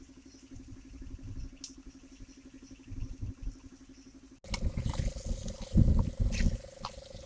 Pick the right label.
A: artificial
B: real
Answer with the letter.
B